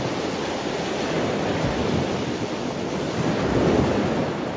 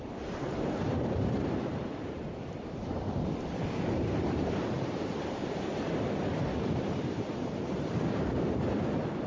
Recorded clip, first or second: first